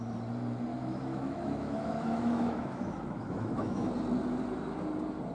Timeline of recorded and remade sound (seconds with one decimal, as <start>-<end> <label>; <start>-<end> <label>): 0.0-0.7 recorded; 0.7-3.9 remade; 3.9-5.3 recorded